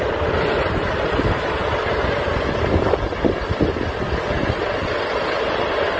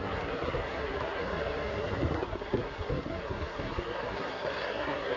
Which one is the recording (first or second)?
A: first